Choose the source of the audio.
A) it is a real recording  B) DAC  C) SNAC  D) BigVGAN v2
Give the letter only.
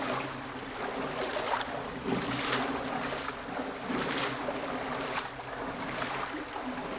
A